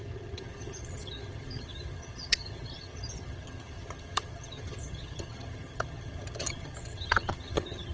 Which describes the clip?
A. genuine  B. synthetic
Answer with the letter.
B